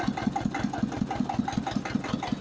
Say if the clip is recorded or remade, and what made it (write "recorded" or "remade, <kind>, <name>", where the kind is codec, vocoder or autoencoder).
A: recorded